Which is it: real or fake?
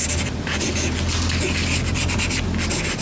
real